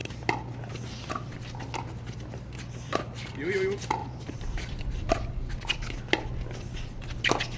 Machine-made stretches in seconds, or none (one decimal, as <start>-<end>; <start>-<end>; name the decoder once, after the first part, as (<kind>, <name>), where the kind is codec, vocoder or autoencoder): 4.0-5.4 (vocoder, BigVGAN v2)